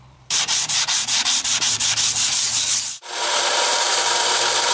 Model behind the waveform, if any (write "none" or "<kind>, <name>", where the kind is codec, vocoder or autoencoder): vocoder, BigVGAN v2